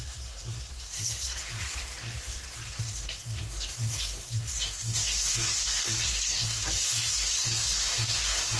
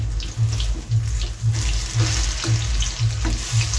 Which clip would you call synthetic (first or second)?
first